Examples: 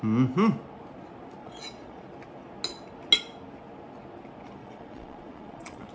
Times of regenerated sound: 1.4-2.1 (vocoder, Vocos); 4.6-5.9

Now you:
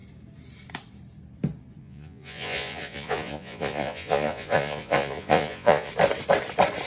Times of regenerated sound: 1.8-5.9 (vocoder, Vocos)

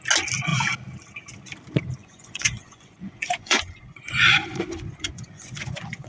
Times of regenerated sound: 2.0-6.1 (vocoder, Vocos)

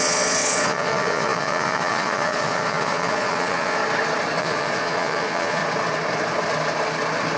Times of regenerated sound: 0.0-3.8 (vocoder, Vocos); 4.4-5.6